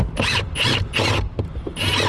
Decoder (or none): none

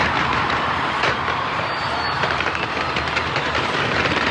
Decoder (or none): vocoder, BigVGAN v2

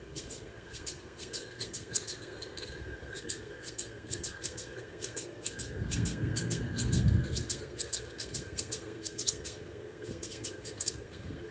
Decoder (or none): codec, SNAC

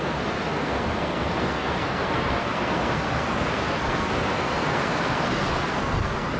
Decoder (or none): codec, SNAC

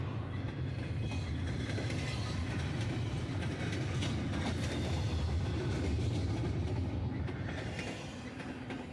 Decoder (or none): none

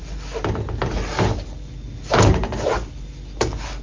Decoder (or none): none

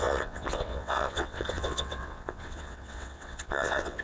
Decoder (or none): vocoder, WaveNeXt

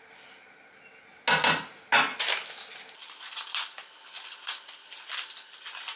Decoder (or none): none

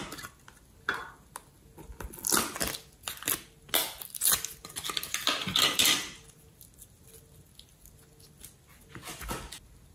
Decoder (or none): none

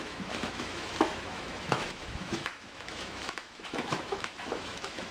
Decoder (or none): autoencoder, DAC-VAE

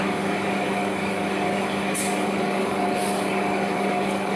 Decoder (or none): codec, DAC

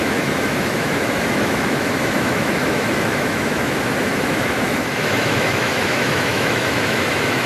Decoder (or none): autoencoder, DAC-VAE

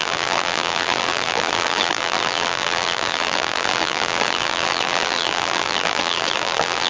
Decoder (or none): vocoder, BigVGAN v2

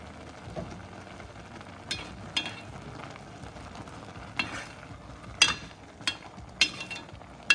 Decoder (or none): none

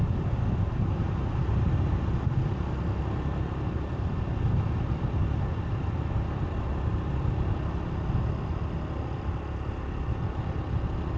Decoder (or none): none